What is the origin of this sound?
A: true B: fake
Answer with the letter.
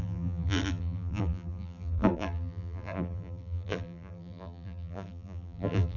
B